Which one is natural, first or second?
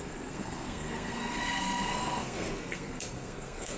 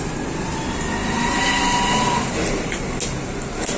second